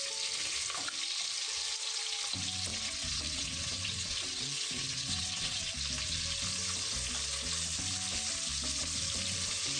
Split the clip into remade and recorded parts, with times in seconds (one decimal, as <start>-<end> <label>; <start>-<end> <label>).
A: 0.0-2.7 recorded; 2.7-5.7 remade; 5.7-9.8 recorded